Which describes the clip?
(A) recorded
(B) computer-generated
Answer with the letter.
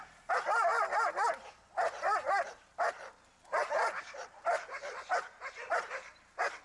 A